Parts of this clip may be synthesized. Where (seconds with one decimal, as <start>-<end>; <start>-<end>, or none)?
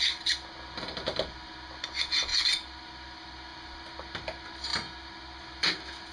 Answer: none